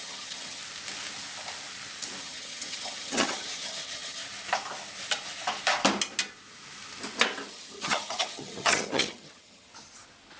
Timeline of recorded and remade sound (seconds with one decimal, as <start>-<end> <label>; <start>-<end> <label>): 0.0-0.6 remade; 0.6-2.2 recorded; 2.2-4.2 remade; 4.2-7.5 recorded; 7.5-9.7 remade; 9.7-10.4 recorded